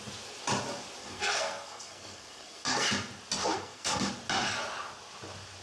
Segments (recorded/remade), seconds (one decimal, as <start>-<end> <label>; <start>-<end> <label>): 0.0-1.0 recorded; 1.0-2.9 remade; 2.9-3.4 recorded; 3.4-4.1 remade; 4.1-5.6 recorded